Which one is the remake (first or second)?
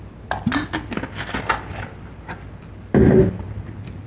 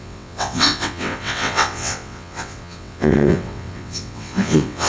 second